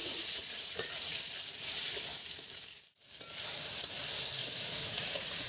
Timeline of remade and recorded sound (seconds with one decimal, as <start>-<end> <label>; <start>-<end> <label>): 0.0-1.2 remade; 1.2-4.4 recorded; 4.4-5.5 remade